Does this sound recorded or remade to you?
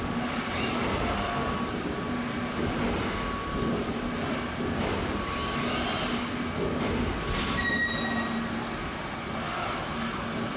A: recorded